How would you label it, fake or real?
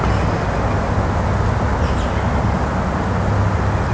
real